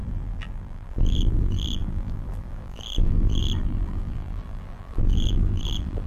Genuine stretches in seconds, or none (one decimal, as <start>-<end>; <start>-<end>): none

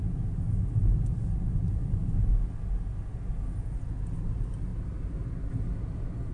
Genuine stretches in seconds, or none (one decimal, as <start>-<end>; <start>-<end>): 0.0-0.8; 2.0-6.3

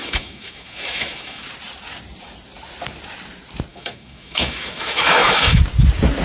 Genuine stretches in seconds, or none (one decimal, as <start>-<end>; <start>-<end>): 1.4-3.7; 5.6-6.2

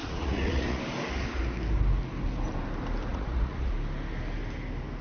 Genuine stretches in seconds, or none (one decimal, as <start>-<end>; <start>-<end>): 0.8-3.1; 3.7-5.0